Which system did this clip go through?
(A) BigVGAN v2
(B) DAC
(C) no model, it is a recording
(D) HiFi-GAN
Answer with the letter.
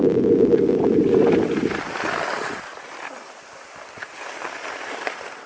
C